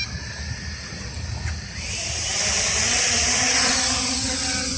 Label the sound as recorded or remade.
recorded